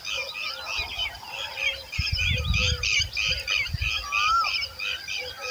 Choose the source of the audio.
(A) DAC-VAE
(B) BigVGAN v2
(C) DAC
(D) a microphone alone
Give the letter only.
D